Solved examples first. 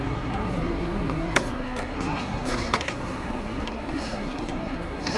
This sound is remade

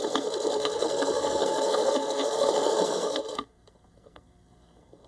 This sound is remade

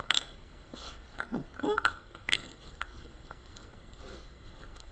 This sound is remade